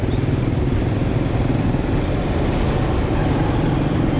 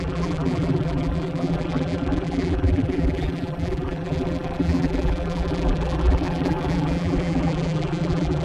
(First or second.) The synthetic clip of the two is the second